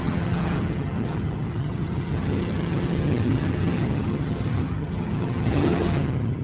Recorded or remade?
remade